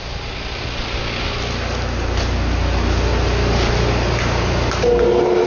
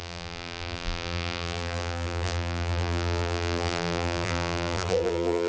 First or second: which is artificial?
second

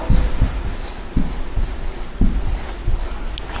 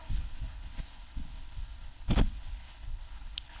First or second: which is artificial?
second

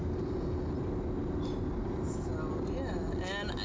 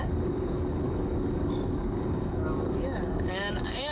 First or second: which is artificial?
second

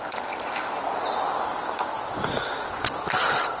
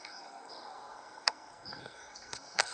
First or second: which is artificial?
second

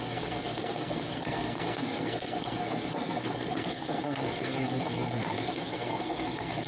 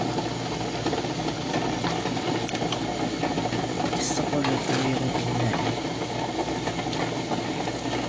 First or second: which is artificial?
first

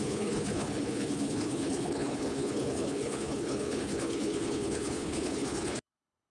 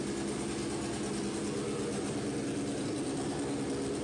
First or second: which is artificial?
first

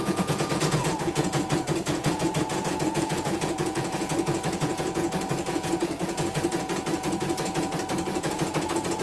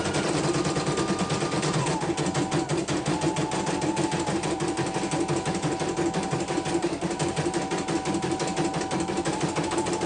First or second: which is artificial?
first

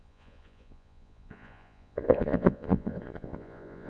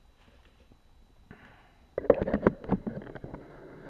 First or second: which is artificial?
first